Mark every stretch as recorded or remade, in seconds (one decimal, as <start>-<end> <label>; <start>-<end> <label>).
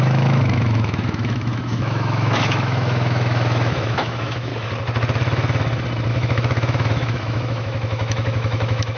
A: 0.0-4.5 remade; 4.5-6.1 recorded; 6.1-9.0 remade